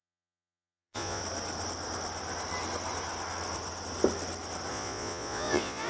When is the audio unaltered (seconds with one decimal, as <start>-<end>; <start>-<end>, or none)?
1.2-4.7